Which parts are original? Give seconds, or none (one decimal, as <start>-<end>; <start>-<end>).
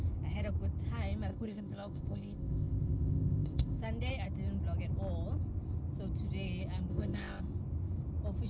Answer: 0.0-1.3; 3.8-6.9; 7.4-8.5